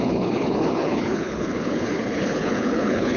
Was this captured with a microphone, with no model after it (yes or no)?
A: no